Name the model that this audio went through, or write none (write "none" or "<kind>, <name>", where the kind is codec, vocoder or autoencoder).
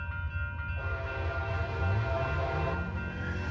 none